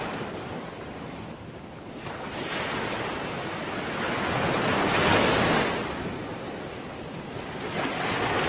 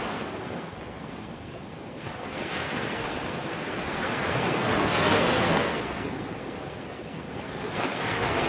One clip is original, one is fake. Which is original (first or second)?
first